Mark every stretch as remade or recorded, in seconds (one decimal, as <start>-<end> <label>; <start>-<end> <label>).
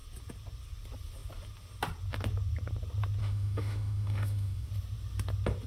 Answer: 0.0-3.2 recorded; 3.2-4.7 remade; 4.7-5.7 recorded